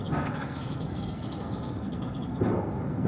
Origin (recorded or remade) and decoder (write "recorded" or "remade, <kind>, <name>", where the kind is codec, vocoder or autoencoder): remade, codec, SNAC